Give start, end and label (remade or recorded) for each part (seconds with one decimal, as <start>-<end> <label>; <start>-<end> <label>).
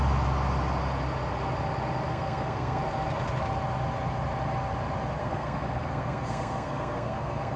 0.0-2.1 recorded; 2.1-2.8 remade; 2.8-5.2 recorded; 5.2-7.6 remade